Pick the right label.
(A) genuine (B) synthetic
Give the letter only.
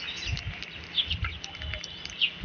A